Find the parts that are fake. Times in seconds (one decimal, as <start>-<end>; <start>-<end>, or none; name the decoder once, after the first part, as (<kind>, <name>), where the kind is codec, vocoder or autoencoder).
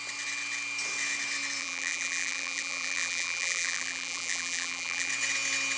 1.6-5.1 (vocoder, BigVGAN v2)